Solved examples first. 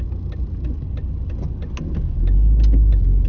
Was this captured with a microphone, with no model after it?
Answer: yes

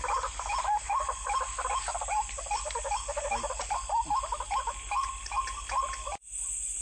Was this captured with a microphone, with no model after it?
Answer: yes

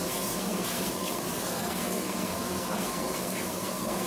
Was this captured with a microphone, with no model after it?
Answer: no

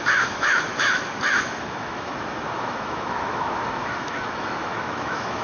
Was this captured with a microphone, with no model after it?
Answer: no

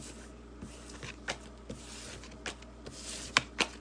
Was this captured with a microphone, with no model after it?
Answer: yes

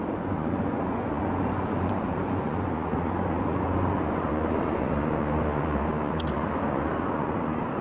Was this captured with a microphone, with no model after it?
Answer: no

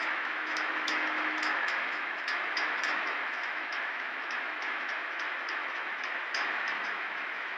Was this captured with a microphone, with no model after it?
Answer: no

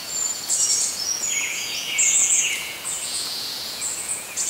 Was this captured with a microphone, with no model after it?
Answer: no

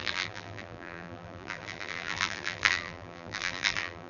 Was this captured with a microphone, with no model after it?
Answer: no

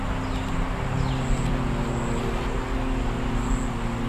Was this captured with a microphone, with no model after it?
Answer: yes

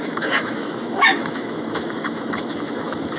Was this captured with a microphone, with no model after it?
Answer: no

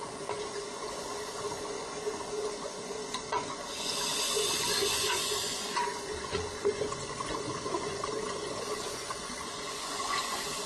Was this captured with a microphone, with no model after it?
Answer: no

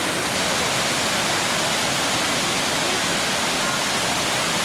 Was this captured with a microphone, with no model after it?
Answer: yes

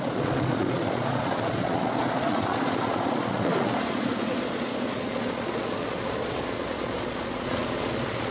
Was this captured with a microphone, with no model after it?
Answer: no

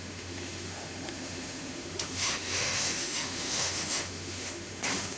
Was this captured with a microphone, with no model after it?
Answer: no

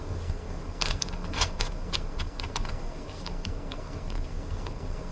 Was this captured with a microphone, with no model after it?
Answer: no